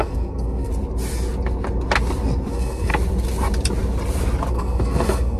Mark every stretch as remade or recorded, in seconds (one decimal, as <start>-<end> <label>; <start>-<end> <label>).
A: 0.0-0.7 remade; 0.7-2.5 recorded; 2.5-2.9 remade; 2.9-4.5 recorded; 4.5-5.4 remade